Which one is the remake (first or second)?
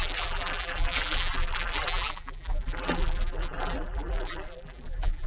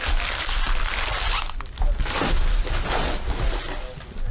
first